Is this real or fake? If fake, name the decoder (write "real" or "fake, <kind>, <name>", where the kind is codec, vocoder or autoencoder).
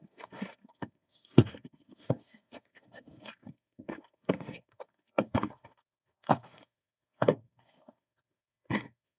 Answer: fake, codec, SNAC